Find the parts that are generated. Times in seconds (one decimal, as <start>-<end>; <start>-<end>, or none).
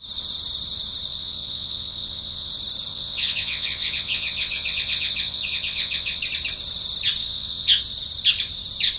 1.1-2.5; 2.9-6.2; 7.2-7.8